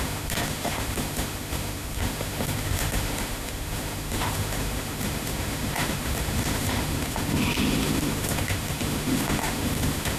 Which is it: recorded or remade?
remade